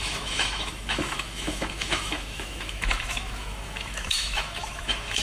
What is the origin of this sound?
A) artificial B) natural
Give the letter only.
A